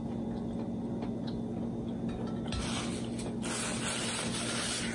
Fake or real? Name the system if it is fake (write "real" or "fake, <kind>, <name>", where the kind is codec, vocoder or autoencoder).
real